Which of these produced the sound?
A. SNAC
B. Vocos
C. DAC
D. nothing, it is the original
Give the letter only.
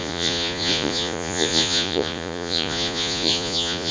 B